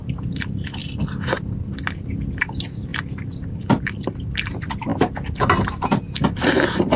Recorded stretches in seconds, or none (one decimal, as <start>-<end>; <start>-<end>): none